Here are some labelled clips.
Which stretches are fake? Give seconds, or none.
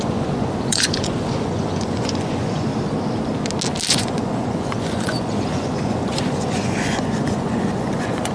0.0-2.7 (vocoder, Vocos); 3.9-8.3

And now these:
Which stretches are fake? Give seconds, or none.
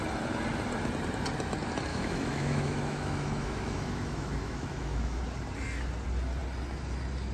1.9-5.2 (autoencoder, DAC-VAE)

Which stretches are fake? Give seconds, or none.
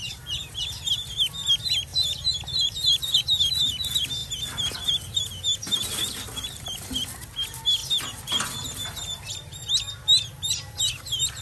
0.0-0.6 (vocoder, BigVGAN v2); 1.9-3.2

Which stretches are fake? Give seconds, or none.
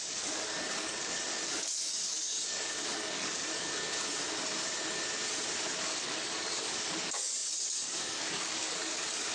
0.0-3.8 (codec, DAC); 5.8-9.3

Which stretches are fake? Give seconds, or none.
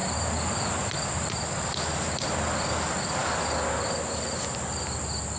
none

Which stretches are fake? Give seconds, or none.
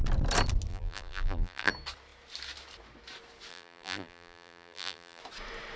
0.7-1.7 (vocoder, BigVGAN v2); 3.5-5.2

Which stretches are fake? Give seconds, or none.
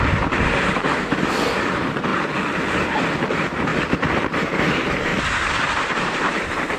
0.0-2.1 (vocoder, BigVGAN v2); 3.3-5.1; 6.0-6.8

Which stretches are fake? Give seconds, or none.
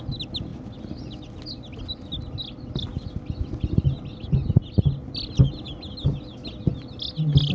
none